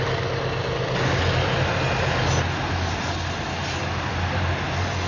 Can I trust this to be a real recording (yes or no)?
yes